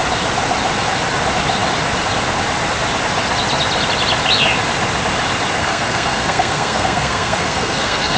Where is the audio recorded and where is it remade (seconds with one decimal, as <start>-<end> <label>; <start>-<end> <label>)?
0.0-5.6 recorded; 5.6-8.2 remade